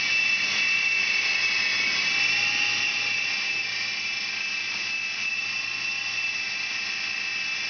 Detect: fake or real real